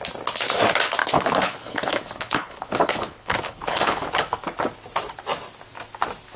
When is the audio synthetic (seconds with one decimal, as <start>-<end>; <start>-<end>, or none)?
1.0-4.2